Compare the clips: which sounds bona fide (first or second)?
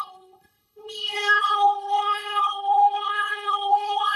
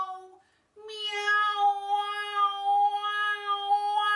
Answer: second